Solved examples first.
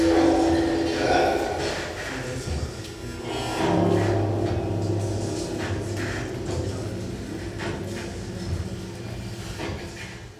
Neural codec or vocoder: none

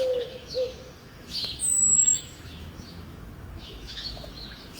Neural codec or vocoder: autoencoder, DAC-VAE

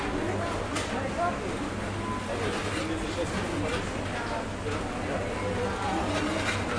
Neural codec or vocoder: none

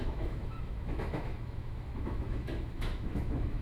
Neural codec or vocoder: autoencoder, DAC-VAE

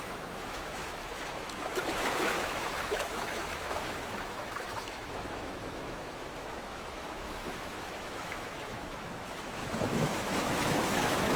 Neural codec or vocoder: autoencoder, DAC-VAE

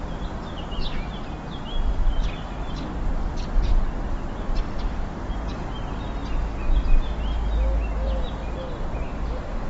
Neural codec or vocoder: none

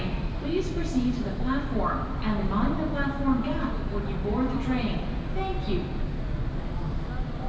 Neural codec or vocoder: none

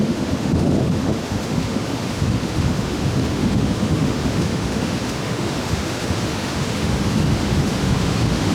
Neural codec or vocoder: autoencoder, DAC-VAE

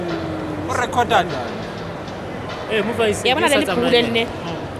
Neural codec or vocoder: none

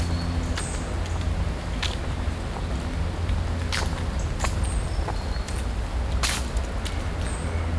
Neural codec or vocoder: none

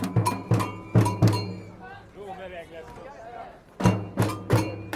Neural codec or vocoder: none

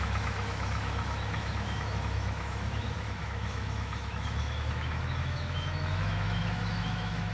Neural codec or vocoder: autoencoder, DAC-VAE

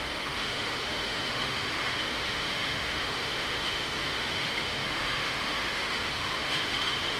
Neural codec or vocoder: autoencoder, DAC-VAE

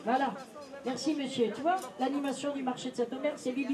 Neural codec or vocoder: none